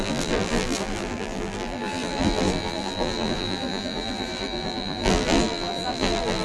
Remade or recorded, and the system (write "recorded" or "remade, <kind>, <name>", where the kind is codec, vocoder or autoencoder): remade, vocoder, BigVGAN v2